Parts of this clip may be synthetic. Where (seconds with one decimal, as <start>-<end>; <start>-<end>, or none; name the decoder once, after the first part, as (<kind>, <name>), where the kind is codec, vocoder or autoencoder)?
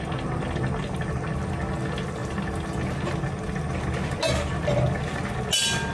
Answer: none